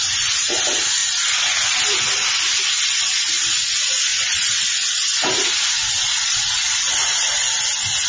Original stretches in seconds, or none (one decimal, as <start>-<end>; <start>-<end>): 0.0-8.1